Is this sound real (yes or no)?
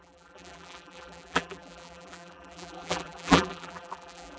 no